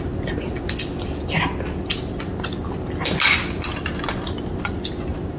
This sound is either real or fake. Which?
real